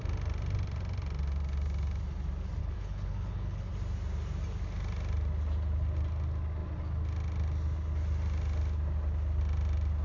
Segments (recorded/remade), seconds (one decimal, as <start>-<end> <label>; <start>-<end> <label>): 0.0-2.6 recorded; 2.6-3.7 remade; 3.7-10.0 recorded